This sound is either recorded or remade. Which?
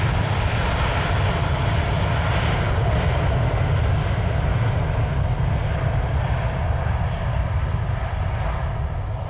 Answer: recorded